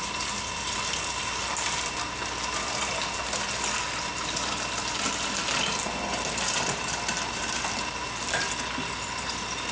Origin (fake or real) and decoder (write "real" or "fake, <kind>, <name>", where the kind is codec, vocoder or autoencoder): real